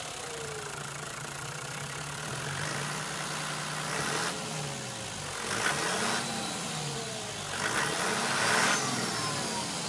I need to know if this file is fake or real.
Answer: real